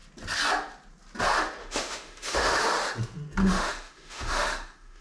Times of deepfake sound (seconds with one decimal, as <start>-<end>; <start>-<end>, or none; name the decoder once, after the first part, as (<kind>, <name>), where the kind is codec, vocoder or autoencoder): 1.6-2.6 (autoencoder, DAC-VAE); 3.4-5.0